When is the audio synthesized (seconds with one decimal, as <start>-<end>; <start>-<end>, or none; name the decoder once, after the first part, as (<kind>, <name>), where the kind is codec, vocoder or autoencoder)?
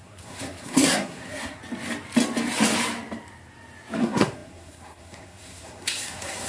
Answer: 0.0-1.6 (codec, SNAC); 4.0-6.5